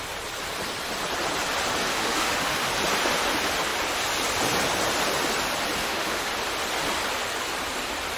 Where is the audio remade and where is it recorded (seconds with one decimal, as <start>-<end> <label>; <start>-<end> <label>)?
0.0-1.9 recorded; 1.9-2.7 remade; 2.7-5.8 recorded; 5.8-6.3 remade; 6.3-8.2 recorded